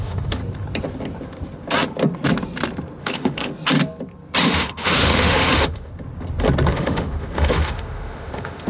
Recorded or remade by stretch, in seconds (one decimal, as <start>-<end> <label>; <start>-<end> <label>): 0.0-0.4 remade; 0.4-3.0 recorded; 3.0-3.5 remade; 3.5-4.4 recorded; 4.4-5.9 remade; 5.9-6.7 recorded; 6.7-8.7 remade